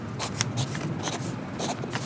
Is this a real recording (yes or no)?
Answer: yes